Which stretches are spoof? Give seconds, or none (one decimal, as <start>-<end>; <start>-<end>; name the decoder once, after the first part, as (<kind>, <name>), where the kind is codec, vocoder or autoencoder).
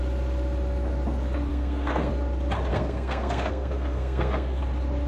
1.5-2.1 (codec, SNAC); 2.7-4.6